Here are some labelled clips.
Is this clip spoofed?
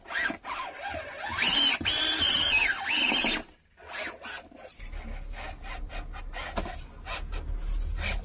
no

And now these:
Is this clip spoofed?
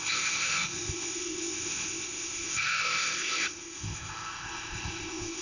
yes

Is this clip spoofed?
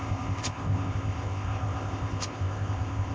yes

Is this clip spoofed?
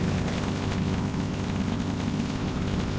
yes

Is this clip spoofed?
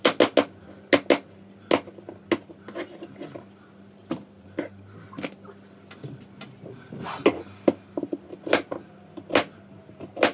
no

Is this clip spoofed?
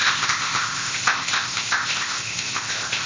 yes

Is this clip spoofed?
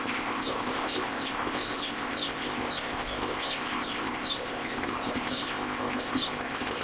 yes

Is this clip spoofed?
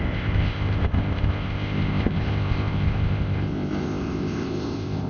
yes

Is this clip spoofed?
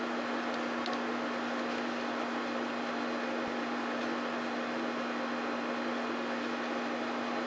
no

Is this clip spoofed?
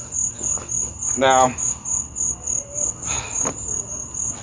no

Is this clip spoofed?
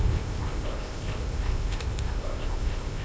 yes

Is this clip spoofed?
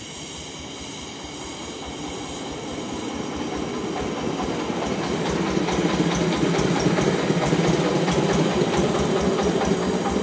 no